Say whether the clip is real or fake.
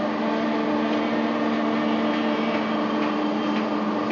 real